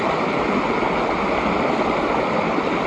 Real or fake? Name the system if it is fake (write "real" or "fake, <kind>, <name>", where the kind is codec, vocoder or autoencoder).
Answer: real